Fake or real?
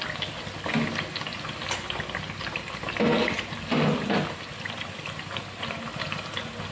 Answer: real